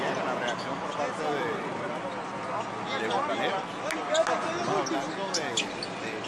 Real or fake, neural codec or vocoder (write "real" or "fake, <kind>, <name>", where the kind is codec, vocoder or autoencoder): real